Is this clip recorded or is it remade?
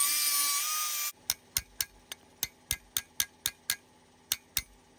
recorded